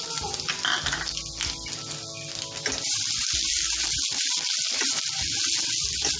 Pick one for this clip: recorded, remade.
recorded